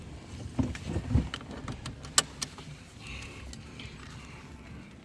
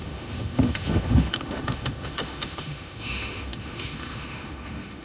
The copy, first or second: second